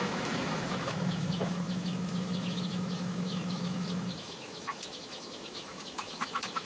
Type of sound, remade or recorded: remade